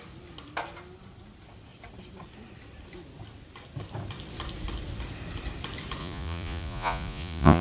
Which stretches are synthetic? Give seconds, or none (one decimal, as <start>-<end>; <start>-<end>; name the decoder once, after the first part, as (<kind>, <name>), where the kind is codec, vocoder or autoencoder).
6.0-7.6 (vocoder, Vocos)